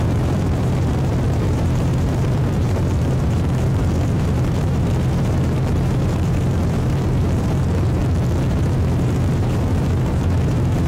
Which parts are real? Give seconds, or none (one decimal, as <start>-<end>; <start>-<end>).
8.0-8.5